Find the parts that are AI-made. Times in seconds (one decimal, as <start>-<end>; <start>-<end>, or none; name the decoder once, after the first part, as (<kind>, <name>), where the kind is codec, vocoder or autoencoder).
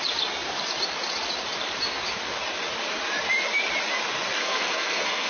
4.4-5.3 (codec, SNAC)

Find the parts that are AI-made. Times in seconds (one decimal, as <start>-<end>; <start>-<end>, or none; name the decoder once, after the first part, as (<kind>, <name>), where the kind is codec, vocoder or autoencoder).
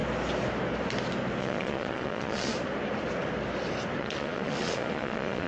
1.4-2.5 (vocoder, Vocos); 4.0-5.5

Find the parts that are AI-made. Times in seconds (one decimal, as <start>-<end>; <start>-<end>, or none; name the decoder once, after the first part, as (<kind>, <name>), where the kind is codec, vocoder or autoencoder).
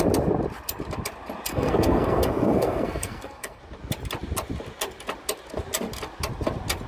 1.5-3.6 (codec, SNAC)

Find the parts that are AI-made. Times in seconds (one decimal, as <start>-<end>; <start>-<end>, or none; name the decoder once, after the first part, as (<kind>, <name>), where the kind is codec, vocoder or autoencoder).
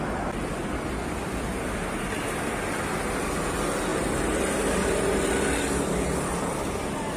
none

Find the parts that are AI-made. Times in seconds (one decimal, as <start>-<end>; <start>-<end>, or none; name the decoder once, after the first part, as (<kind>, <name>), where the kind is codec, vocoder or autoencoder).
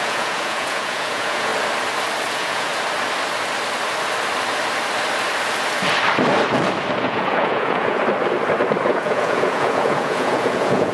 0.0-1.5 (vocoder, Vocos); 2.3-2.7; 7.0-8.0; 8.8-10.9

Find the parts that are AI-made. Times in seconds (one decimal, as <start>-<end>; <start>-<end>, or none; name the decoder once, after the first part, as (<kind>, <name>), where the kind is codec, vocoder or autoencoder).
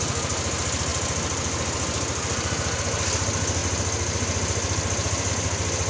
none